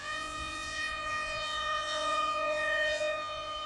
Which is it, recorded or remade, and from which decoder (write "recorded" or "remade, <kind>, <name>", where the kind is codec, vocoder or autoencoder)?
remade, vocoder, Vocos